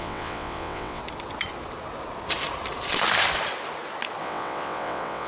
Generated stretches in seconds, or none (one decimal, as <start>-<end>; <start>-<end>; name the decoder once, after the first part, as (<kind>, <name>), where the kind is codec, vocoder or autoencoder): 0.0-1.0 (vocoder, WaveNeXt); 4.2-5.3